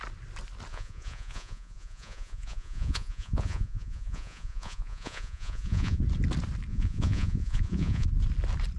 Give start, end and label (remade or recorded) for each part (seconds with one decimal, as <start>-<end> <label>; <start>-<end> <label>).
0.0-0.7 recorded; 0.7-6.0 remade; 6.0-6.7 recorded; 6.7-8.1 remade; 8.1-8.8 recorded